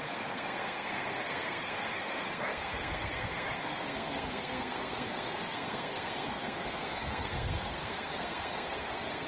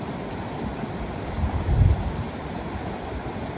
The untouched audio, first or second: second